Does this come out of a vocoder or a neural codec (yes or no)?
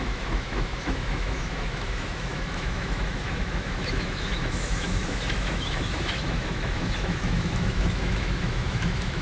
yes